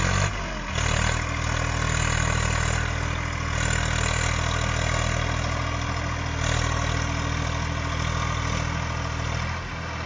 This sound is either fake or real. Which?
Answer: real